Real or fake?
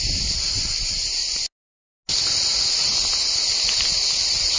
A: real